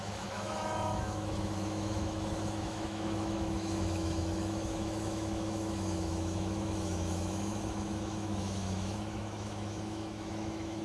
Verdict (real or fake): fake